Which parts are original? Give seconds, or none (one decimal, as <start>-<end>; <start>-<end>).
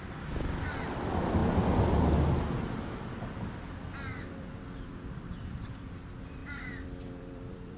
1.4-3.4